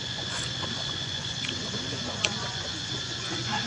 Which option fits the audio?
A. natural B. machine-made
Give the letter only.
B